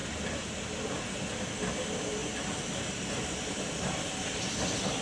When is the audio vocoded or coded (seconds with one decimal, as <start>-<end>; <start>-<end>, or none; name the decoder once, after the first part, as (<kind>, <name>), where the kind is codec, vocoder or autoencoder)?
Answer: none